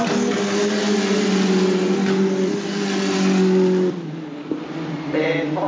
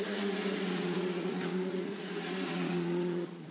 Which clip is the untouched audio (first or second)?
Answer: first